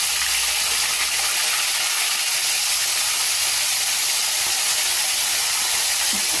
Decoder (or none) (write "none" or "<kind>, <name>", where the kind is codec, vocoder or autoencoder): none